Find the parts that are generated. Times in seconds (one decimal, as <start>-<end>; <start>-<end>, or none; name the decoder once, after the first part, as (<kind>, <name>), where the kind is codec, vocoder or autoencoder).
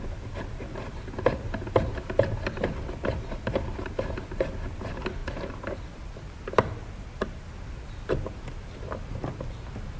none